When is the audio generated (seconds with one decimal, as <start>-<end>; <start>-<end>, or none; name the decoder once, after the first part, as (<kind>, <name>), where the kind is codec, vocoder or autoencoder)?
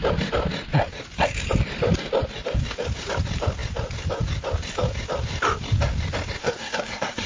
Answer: 6.4-7.3 (codec, SNAC)